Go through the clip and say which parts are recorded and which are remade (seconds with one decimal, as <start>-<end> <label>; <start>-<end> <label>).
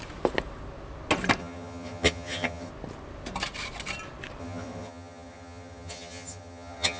0.0-1.4 recorded; 1.4-2.7 remade; 2.7-4.4 recorded; 4.4-7.0 remade